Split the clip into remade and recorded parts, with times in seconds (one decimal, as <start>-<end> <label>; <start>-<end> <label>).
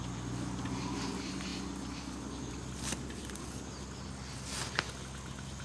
0.0-5.6 recorded